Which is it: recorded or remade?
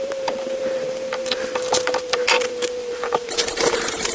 remade